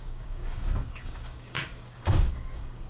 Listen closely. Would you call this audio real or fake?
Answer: fake